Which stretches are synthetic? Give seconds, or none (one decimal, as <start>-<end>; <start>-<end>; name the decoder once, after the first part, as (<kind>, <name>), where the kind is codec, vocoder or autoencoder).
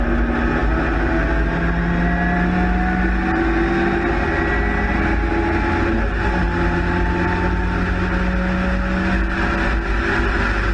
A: none